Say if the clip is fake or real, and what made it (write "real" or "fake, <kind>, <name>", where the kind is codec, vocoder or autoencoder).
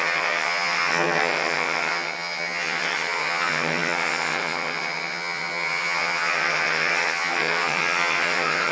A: fake, vocoder, HiFi-GAN